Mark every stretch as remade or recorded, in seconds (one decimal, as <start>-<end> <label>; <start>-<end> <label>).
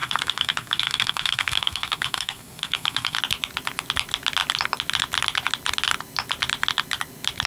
0.0-3.2 remade; 3.2-7.5 recorded